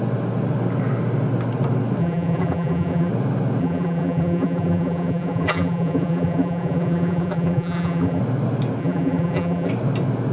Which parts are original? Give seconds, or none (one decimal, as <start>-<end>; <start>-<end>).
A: 0.0-2.0; 3.1-3.6; 8.2-8.8; 9.7-10.3